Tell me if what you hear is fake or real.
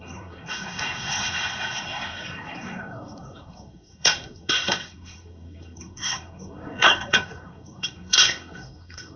fake